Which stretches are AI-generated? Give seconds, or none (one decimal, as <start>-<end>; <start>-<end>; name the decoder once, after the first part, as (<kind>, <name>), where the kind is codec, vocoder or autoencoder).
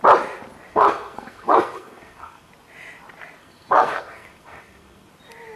0.7-2.5 (codec, SNAC); 3.4-5.1